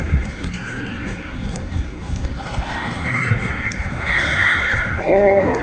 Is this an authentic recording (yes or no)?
no